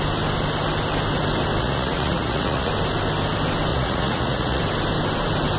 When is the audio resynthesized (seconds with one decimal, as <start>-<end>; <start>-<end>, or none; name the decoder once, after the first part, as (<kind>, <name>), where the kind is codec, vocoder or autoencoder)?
1.6-2.7 (vocoder, Vocos); 3.7-4.6